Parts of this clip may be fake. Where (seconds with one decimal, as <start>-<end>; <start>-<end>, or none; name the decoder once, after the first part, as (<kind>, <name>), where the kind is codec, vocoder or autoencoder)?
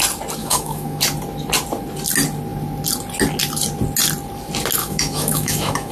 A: 0.4-1.0 (autoencoder, DAC-VAE); 4.8-5.9